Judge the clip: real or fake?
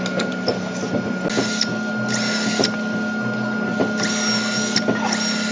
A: real